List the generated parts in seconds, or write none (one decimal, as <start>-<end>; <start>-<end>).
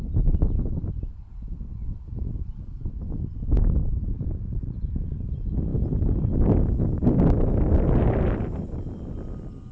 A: 3.8-5.3